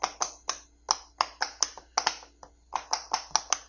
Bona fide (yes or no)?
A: yes